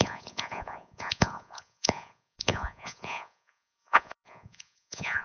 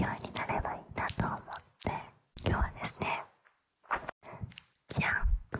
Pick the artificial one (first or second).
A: first